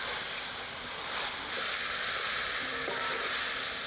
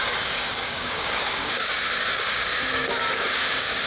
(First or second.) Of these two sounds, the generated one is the second